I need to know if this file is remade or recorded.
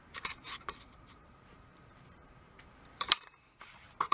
remade